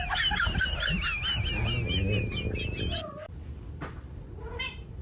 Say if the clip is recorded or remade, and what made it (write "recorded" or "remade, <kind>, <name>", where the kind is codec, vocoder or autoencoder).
recorded